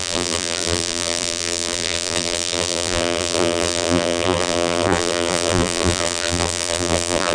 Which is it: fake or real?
fake